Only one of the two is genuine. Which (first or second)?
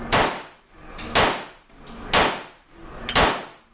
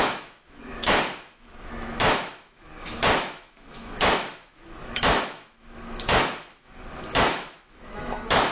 first